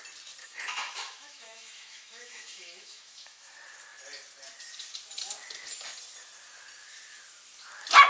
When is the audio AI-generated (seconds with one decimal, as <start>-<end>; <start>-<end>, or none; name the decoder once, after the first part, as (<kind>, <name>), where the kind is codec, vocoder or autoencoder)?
0.4-3.5 (autoencoder, DAC-VAE)